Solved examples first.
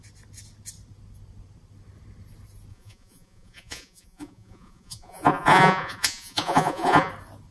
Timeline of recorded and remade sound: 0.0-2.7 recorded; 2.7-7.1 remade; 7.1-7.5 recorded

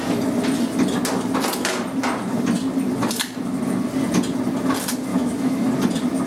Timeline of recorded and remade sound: 0.0-5.1 recorded; 5.1-5.7 remade; 5.7-6.3 recorded